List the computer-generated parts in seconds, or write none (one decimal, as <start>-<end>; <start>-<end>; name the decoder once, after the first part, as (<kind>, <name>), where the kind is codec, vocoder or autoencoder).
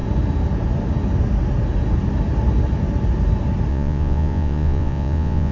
3.7-5.5 (vocoder, Vocos)